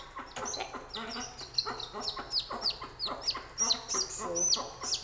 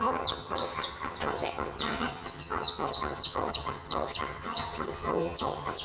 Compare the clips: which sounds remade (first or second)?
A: second